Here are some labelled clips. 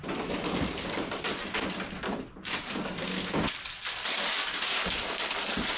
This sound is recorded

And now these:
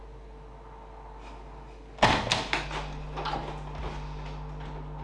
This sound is recorded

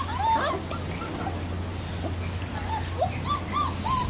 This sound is recorded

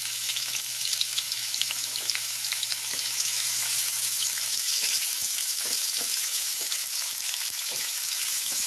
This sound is remade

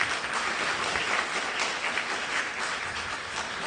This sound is recorded